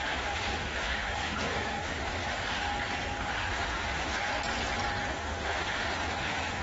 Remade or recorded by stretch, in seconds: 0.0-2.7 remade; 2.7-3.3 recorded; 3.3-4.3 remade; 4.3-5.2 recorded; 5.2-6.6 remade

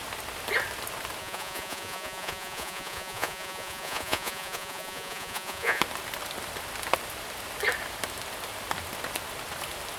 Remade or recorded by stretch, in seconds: 0.0-1.2 recorded; 1.2-5.8 remade; 5.8-10.0 recorded

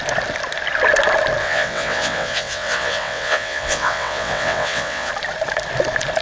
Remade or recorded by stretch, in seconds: 0.0-1.4 recorded; 1.4-5.1 remade; 5.1-6.2 recorded

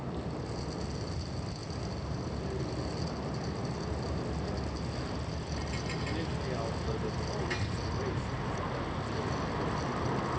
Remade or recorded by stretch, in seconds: 0.0-10.4 recorded

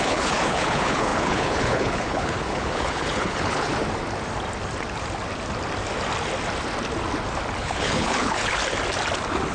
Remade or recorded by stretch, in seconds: 0.0-3.7 remade; 3.7-7.6 recorded; 7.6-8.6 remade; 8.6-9.5 recorded